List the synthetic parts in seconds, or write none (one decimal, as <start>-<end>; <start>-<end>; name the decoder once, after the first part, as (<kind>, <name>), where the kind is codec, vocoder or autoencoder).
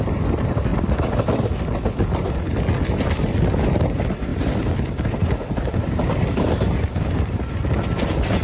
0.0-0.7 (vocoder, BigVGAN v2); 3.6-8.4